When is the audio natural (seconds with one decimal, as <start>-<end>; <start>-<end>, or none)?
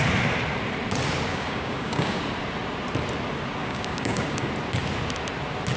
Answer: 0.0-1.3; 2.2-3.6; 4.5-5.8